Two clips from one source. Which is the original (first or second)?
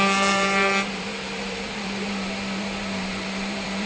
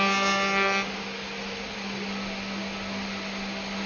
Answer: second